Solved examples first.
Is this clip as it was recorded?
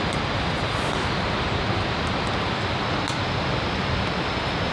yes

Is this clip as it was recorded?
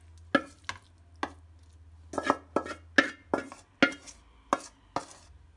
yes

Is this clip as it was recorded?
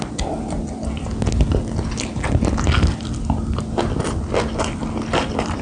yes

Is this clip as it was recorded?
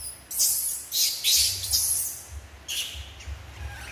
yes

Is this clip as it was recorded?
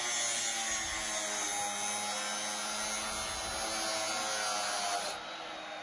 yes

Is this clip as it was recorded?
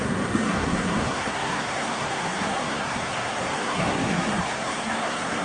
no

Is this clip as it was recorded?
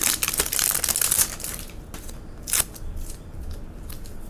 yes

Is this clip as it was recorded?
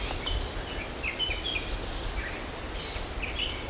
yes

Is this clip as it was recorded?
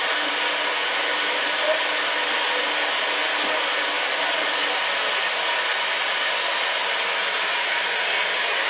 yes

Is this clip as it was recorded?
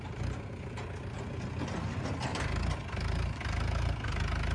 yes